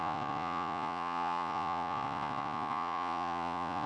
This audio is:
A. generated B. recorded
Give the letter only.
A